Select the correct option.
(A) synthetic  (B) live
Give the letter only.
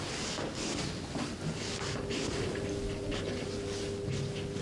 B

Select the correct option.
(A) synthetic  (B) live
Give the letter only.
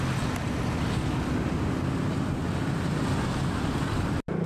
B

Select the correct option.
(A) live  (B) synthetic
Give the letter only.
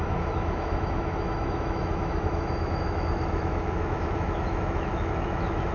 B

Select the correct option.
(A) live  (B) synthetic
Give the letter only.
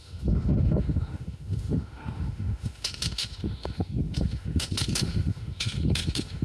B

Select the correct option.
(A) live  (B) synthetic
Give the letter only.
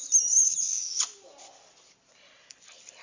A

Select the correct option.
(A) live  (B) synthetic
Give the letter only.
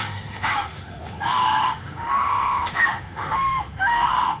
B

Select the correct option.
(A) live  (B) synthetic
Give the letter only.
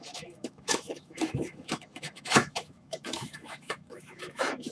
B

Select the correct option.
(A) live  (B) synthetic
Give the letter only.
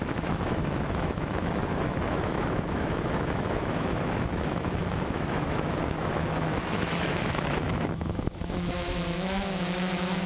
B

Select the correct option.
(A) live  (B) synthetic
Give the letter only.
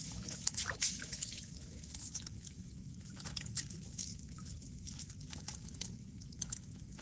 B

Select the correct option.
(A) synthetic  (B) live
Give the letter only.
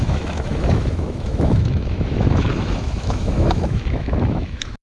A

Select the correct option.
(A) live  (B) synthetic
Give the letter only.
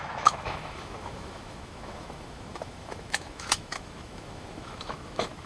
B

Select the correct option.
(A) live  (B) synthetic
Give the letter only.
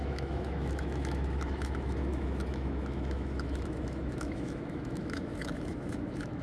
B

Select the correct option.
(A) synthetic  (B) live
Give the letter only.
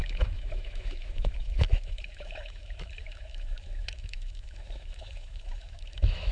A